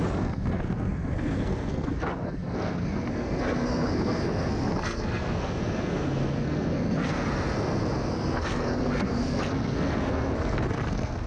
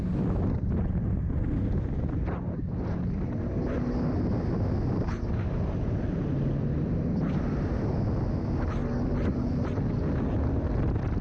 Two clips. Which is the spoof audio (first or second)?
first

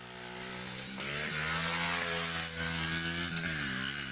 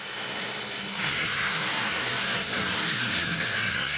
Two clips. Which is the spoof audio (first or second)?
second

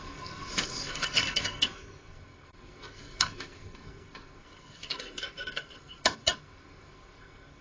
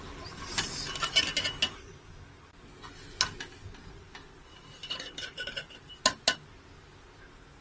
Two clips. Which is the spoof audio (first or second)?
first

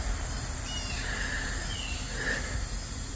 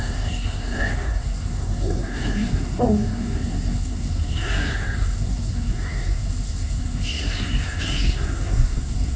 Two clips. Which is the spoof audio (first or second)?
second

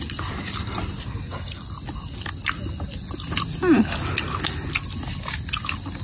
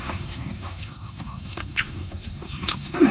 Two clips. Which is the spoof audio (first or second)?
second